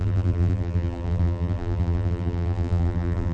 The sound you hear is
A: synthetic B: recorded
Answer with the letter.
A